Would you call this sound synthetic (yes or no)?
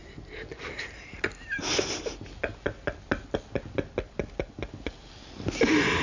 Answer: no